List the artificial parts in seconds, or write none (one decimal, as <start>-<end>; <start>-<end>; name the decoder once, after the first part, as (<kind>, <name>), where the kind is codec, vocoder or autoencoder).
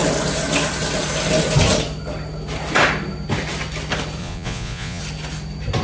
4.2-5.0 (vocoder, Vocos)